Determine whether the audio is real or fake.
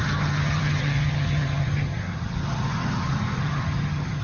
fake